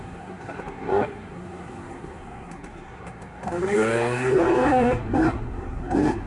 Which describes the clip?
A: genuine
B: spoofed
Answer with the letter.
B